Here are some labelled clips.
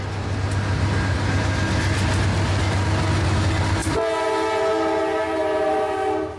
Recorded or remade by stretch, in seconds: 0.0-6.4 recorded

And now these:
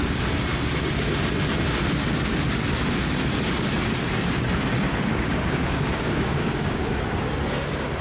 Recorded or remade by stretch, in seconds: 0.0-4.7 recorded; 4.7-6.9 remade; 6.9-8.0 recorded